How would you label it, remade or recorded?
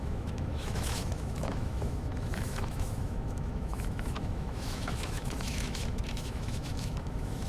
remade